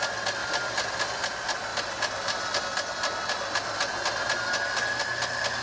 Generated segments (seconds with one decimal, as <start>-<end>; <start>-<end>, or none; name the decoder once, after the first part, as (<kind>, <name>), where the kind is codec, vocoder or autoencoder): 0.4-1.0 (vocoder, BigVGAN v2); 1.7-2.6